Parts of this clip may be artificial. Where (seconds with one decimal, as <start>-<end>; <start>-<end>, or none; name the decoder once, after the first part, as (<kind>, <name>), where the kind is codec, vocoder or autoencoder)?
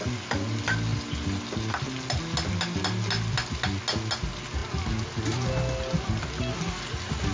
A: none